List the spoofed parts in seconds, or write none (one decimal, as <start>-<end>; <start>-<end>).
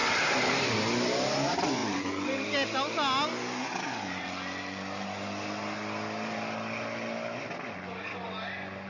none